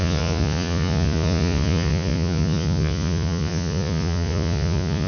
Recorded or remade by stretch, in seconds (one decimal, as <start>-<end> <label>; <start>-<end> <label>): 0.0-5.1 remade